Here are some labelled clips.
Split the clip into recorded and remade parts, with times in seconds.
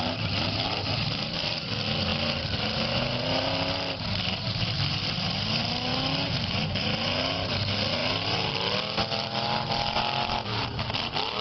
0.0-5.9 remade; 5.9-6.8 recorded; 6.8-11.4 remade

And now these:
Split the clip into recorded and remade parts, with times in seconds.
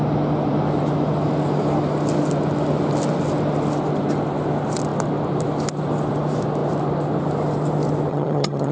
0.0-8.1 recorded; 8.1-8.7 remade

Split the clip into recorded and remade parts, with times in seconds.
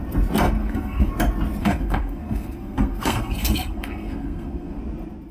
0.0-0.6 recorded; 0.6-1.1 remade; 1.1-1.6 recorded; 1.6-4.8 remade; 4.8-5.3 recorded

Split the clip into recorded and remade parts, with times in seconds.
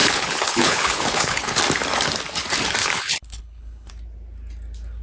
0.0-1.6 remade; 1.6-2.8 recorded; 2.8-3.9 remade; 3.9-5.0 recorded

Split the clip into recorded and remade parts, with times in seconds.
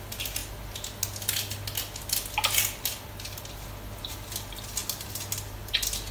0.0-6.1 recorded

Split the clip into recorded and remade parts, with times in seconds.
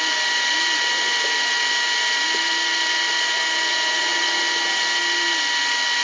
0.0-6.0 recorded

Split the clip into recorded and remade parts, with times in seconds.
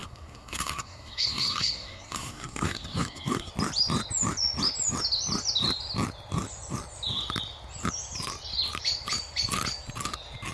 0.0-3.5 remade; 3.5-10.5 recorded